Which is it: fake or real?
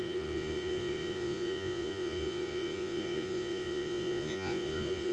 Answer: fake